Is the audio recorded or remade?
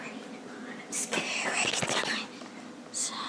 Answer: remade